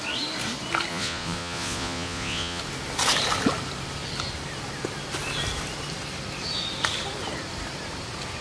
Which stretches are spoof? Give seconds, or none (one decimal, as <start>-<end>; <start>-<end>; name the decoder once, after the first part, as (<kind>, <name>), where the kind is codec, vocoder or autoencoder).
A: 0.9-2.6 (vocoder, Vocos)